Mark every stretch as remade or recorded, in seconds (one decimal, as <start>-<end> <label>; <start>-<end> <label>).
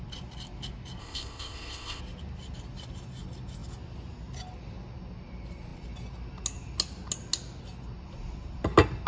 0.0-1.0 recorded; 1.0-2.0 remade; 2.0-9.1 recorded